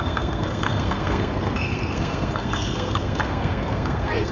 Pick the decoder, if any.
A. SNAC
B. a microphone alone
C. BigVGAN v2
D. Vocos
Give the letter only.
A